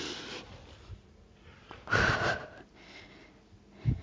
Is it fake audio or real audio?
real